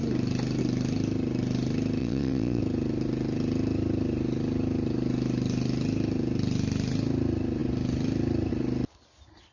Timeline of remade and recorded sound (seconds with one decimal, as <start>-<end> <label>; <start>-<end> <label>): 0.0-2.0 recorded; 2.0-2.6 remade; 2.6-9.5 recorded

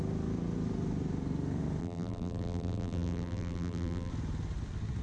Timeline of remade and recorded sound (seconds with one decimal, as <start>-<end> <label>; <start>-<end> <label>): 0.0-1.8 recorded; 1.8-4.1 remade; 4.1-5.0 recorded

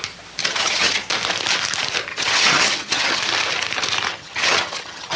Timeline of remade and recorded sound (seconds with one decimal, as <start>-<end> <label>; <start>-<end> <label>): 0.0-0.4 recorded; 0.4-1.0 remade; 1.0-2.1 recorded; 2.1-3.2 remade; 3.2-4.1 recorded; 4.1-5.2 remade